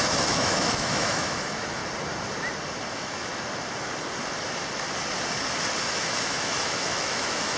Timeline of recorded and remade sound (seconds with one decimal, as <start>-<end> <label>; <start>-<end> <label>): 0.0-1.8 remade; 1.8-2.9 recorded; 2.9-3.3 remade; 3.3-5.8 recorded; 5.8-7.6 remade